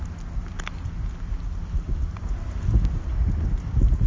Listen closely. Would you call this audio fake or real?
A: real